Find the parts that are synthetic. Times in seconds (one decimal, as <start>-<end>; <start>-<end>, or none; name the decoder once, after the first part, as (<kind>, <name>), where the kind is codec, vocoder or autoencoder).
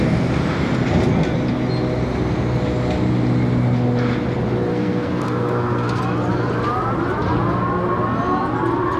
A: 4.7-6.0 (codec, SNAC)